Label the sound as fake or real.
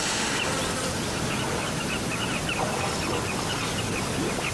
real